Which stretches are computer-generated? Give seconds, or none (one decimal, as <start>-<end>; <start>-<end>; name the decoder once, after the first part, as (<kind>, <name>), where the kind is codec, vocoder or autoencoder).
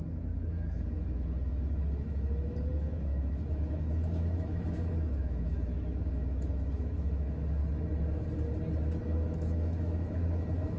0.0-7.6 (autoencoder, DAC-VAE); 9.0-10.8